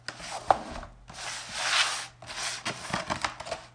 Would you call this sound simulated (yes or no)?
no